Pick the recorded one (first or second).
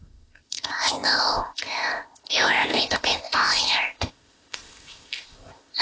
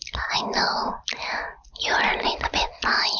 second